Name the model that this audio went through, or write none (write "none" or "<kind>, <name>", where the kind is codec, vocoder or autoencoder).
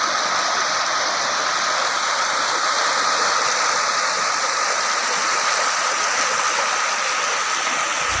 none